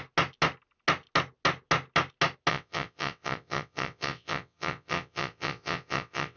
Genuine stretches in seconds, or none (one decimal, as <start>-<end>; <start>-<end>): 0.0-2.5

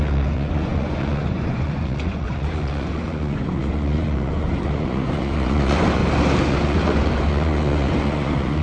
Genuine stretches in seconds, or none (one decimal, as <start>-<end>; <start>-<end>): 6.0-6.5

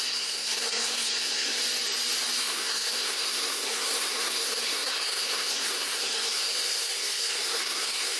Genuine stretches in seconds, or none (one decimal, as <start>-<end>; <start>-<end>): 1.6-2.4

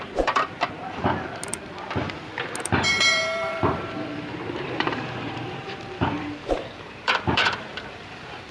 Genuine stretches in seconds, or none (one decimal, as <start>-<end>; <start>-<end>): 0.8-2.9

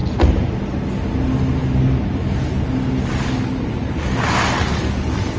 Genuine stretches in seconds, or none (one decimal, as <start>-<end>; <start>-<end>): 0.0-5.4

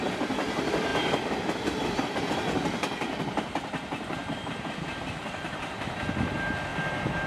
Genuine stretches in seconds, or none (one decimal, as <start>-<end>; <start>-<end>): 0.0-0.9; 2.3-4.2; 5.6-7.3

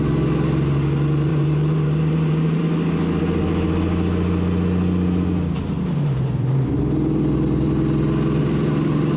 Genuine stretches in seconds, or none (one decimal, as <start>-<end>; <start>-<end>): 0.0-1.3; 2.6-5.6; 6.8-8.4